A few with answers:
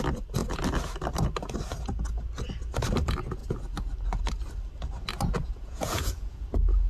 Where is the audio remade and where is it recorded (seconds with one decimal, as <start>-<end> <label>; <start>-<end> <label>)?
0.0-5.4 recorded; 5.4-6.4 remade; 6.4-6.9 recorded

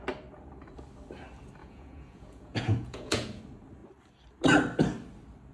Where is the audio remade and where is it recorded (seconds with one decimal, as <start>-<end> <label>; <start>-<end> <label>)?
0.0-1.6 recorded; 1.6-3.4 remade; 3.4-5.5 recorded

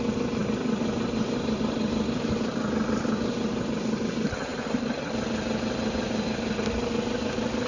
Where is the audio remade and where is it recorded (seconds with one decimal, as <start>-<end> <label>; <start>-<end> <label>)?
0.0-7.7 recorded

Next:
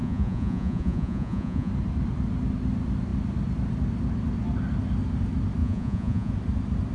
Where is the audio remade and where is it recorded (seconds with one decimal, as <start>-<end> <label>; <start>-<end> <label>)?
0.0-1.7 remade; 1.7-5.6 recorded; 5.6-6.3 remade; 6.3-6.9 recorded

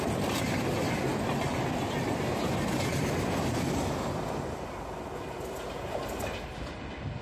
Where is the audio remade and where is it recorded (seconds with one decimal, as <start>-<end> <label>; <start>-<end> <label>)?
0.0-7.2 recorded